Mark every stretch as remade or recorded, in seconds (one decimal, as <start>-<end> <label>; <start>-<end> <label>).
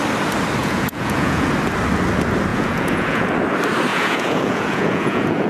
0.0-0.6 recorded; 0.6-1.5 remade; 1.5-2.5 recorded; 2.5-3.3 remade; 3.3-3.9 recorded; 3.9-5.5 remade